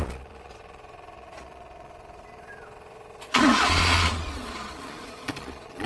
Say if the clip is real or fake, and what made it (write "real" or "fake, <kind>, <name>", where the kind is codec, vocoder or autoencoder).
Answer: fake, vocoder, Vocos